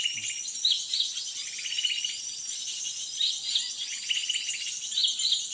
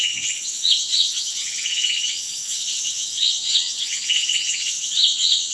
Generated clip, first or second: second